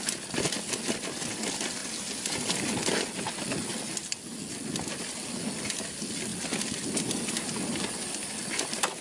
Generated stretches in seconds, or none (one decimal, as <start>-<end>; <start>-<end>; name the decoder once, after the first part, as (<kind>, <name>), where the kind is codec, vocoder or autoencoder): none

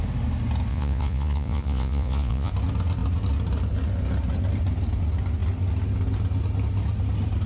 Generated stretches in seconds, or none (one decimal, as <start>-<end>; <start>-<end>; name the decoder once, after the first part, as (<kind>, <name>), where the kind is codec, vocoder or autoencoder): 0.7-2.5 (vocoder, Vocos)

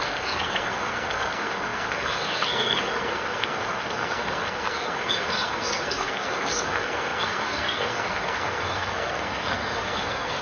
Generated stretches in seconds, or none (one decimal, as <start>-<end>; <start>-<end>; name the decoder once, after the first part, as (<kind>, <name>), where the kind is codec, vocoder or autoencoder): 0.0-10.4 (codec, SNAC)

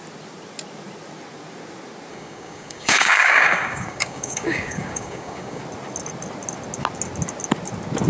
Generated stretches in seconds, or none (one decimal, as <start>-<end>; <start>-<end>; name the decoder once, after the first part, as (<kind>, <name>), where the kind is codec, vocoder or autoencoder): 2.1-5.6 (codec, DAC)

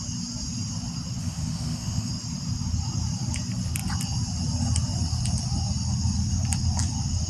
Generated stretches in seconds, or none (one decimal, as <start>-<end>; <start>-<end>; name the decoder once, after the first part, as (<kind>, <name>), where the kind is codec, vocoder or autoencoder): 1.2-2.1 (autoencoder, DAC-VAE)